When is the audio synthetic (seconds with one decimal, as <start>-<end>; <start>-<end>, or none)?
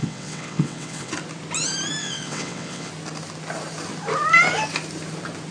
0.0-1.1; 2.0-2.9